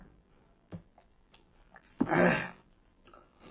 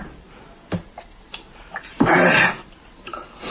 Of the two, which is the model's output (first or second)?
first